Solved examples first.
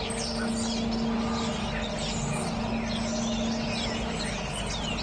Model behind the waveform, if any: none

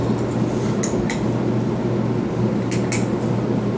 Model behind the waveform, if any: none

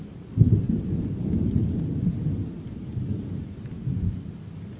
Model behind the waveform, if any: none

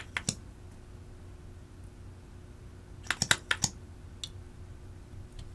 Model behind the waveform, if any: none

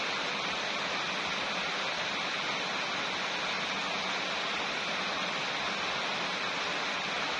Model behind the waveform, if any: none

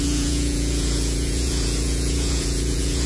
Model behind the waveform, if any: vocoder, Vocos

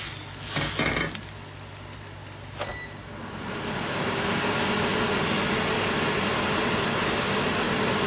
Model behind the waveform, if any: none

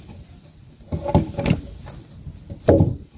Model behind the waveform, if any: none